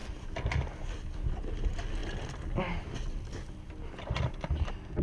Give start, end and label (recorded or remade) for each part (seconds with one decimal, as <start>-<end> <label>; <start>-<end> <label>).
0.0-5.0 recorded